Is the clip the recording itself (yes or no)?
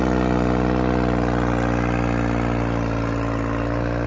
yes